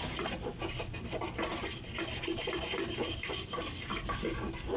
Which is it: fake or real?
real